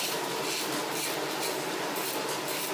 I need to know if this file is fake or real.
real